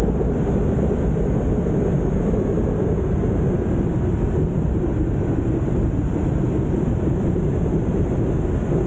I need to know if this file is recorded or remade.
recorded